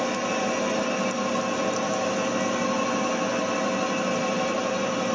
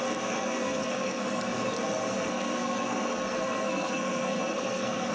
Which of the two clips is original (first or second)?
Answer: first